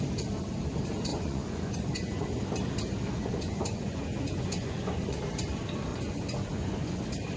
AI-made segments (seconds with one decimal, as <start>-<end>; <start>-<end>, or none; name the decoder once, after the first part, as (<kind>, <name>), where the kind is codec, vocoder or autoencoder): 1.1-2.4 (vocoder, Vocos); 3.2-5.2; 5.9-7.0